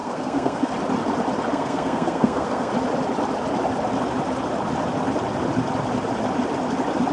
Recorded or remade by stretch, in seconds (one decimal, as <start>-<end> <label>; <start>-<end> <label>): 0.0-0.7 remade; 0.7-1.5 recorded; 1.5-2.7 remade; 2.7-7.1 recorded